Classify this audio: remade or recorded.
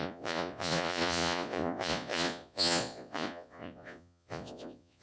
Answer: remade